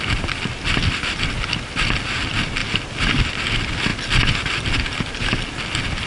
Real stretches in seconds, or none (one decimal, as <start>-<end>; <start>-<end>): 0.0-6.1